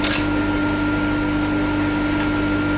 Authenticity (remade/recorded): recorded